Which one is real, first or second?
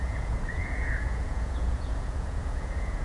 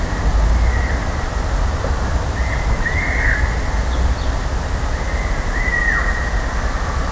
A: second